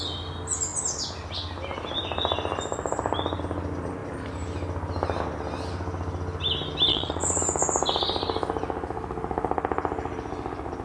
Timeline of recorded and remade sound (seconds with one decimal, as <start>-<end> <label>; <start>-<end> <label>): 0.0-6.9 recorded; 6.9-7.4 remade; 7.4-10.8 recorded